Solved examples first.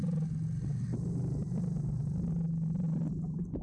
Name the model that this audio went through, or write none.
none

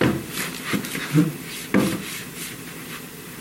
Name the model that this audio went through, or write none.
vocoder, BigVGAN v2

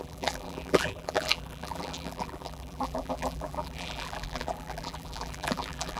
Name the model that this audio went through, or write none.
vocoder, BigVGAN v2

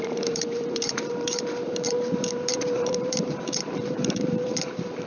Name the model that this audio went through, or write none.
vocoder, BigVGAN v2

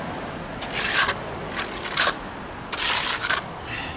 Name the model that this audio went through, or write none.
vocoder, BigVGAN v2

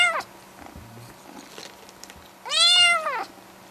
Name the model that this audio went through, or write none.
none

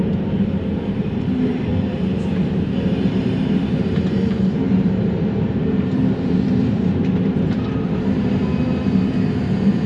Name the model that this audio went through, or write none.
vocoder, BigVGAN v2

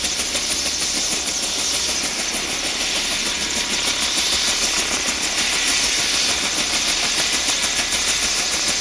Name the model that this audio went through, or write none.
none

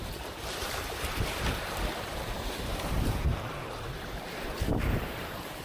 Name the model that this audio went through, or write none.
vocoder, BigVGAN v2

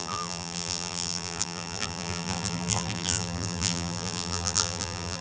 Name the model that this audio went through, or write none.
vocoder, BigVGAN v2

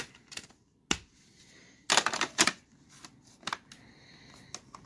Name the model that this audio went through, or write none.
none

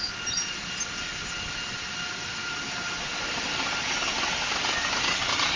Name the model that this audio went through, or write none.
none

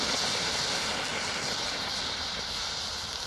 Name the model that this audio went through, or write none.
none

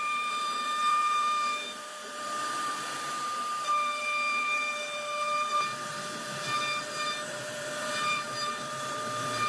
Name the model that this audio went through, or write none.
vocoder, BigVGAN v2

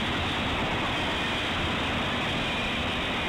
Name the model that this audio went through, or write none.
none